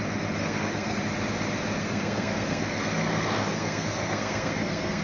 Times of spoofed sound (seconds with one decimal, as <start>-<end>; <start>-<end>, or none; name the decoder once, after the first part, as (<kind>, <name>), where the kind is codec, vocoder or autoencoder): 0.4-1.0 (codec, SNAC); 1.8-5.0